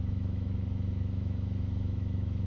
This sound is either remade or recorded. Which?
remade